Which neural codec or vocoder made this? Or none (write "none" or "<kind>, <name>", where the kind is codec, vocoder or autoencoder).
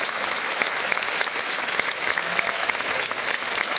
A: autoencoder, DAC-VAE